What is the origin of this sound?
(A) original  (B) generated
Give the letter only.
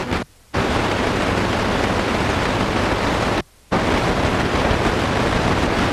A